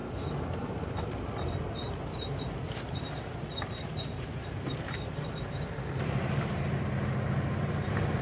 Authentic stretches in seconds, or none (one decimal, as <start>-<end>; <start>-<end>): 0.0-8.2